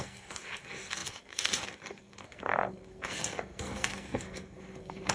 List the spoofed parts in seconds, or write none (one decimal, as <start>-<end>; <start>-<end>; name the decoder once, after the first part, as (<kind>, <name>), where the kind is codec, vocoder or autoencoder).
0.0-5.1 (codec, SNAC)